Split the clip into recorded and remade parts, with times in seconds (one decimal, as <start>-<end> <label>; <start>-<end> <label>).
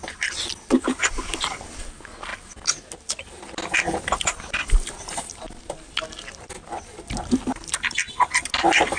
0.0-9.0 recorded